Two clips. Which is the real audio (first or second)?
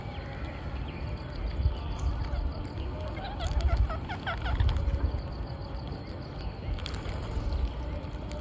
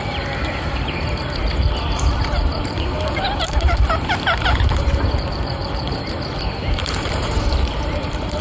first